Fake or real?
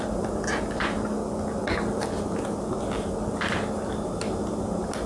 real